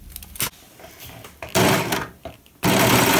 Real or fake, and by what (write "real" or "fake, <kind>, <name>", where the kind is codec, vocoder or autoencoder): real